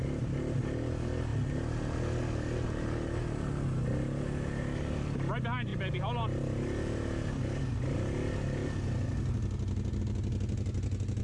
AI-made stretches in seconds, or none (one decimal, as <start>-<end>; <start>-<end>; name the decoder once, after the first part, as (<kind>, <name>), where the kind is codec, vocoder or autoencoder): none